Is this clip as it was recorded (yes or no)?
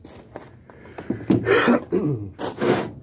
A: yes